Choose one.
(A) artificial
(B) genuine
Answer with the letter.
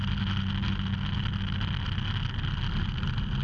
B